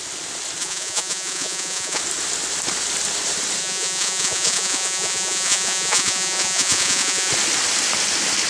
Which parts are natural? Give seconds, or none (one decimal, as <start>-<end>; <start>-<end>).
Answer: 0.0-0.6; 2.0-3.6; 7.3-8.5